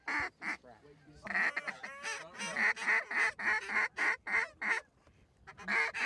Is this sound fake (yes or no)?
no